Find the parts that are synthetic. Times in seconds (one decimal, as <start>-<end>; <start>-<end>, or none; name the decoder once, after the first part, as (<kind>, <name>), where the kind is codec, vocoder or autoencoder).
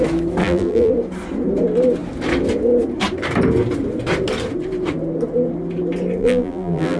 0.4-0.9 (vocoder, BigVGAN v2); 6.2-7.0